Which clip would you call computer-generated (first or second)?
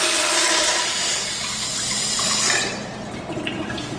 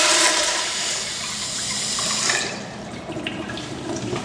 second